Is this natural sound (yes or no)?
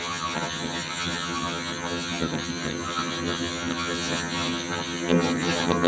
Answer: no